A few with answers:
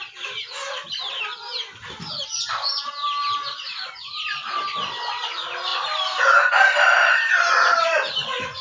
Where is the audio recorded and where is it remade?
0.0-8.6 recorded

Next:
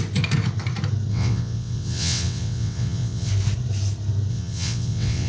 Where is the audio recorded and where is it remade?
0.0-1.1 recorded; 1.1-3.3 remade; 3.3-4.3 recorded; 4.3-5.3 remade

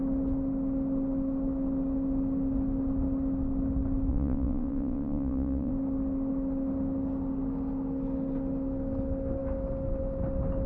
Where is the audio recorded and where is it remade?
0.0-4.1 recorded; 4.1-5.7 remade; 5.7-10.7 recorded

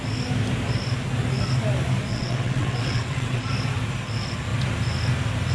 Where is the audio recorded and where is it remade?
0.0-2.1 recorded; 2.1-3.5 remade; 3.5-5.5 recorded

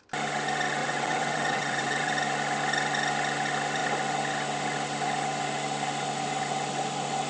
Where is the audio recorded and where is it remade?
0.0-0.8 recorded; 0.8-2.1 remade; 2.1-7.3 recorded